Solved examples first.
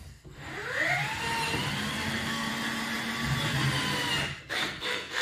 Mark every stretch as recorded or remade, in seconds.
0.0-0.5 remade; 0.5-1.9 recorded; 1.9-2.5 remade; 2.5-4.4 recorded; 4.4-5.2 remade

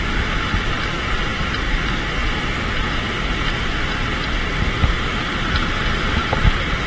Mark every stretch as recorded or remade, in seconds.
0.0-1.3 recorded; 1.3-1.8 remade; 1.8-4.4 recorded; 4.4-6.9 remade

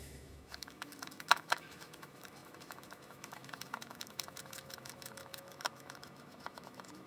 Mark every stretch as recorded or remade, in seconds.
0.0-7.1 remade

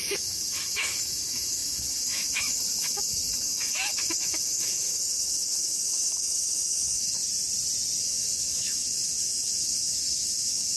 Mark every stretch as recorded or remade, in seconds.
0.0-7.2 remade; 7.2-8.0 recorded; 8.0-10.8 remade

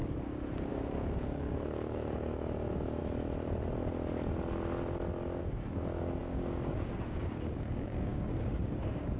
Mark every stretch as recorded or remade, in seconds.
0.0-0.7 recorded; 0.7-3.0 remade; 3.0-5.4 recorded; 5.4-9.2 remade

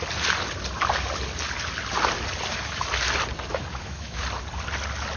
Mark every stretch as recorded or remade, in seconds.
0.0-3.5 recorded; 3.5-4.2 remade; 4.2-5.2 recorded

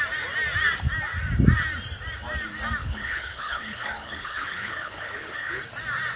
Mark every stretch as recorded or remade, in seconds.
0.0-2.8 recorded; 2.8-5.6 remade; 5.6-6.2 recorded

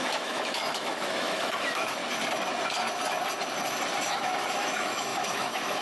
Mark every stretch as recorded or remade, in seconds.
0.0-2.0 remade; 2.0-4.0 recorded; 4.0-5.8 remade